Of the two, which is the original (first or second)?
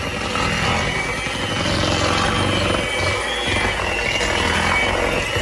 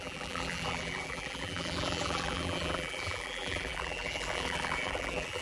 first